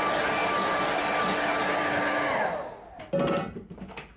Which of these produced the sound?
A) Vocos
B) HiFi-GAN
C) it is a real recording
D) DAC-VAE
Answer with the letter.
C